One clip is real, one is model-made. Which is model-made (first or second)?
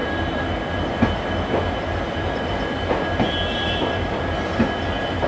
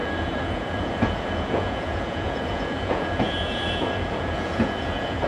second